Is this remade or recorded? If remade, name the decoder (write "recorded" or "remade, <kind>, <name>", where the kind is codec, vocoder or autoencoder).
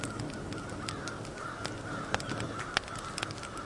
recorded